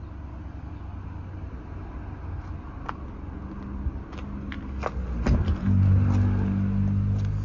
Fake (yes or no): no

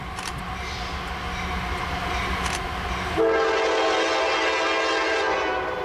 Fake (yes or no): no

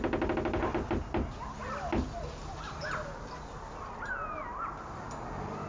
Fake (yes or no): no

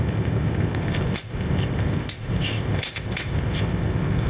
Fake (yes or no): yes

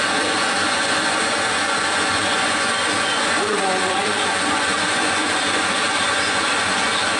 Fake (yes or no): yes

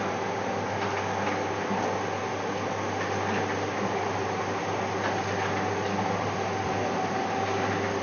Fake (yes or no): no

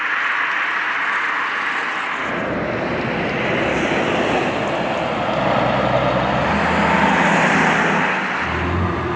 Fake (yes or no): no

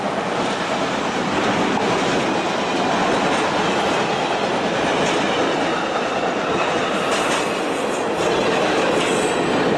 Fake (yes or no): no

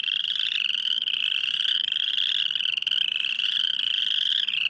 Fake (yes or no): no